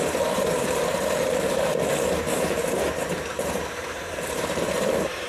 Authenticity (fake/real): fake